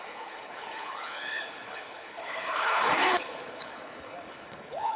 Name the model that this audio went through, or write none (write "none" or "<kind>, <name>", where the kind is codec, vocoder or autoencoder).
codec, HILCodec